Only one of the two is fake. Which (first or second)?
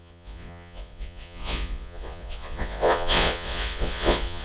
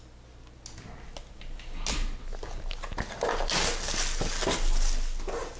first